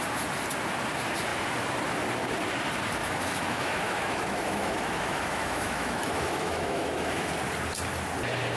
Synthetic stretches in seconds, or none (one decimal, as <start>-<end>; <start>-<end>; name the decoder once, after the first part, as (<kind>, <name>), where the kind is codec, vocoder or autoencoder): 3.0-7.3 (autoencoder, DAC-VAE)